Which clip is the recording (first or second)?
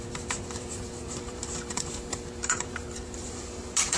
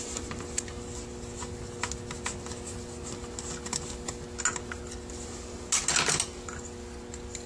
second